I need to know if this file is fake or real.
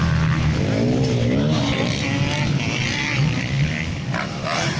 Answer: real